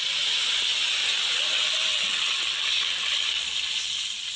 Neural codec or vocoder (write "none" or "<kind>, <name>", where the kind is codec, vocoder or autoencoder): none